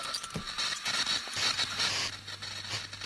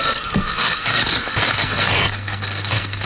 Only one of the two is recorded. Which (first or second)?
first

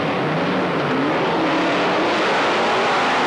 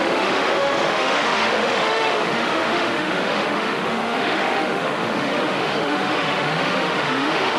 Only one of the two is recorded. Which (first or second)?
first